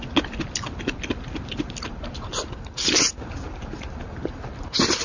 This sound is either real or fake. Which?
real